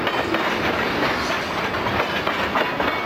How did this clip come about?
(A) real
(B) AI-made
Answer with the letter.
A